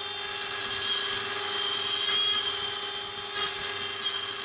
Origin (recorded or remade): recorded